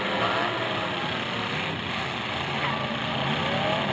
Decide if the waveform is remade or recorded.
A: recorded